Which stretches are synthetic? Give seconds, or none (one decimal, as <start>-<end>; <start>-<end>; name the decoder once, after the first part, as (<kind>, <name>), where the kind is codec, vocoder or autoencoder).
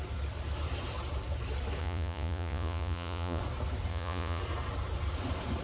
1.8-3.4 (vocoder, Vocos); 3.9-4.4